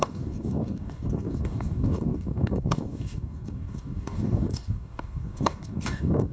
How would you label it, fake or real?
fake